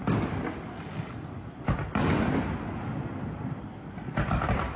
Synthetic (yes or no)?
no